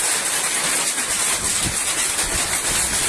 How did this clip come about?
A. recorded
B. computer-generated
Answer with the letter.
A